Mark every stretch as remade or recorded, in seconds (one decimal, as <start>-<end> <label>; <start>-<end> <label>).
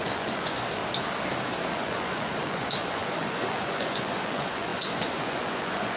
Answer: 0.0-0.8 remade; 0.8-1.7 recorded; 1.7-6.0 remade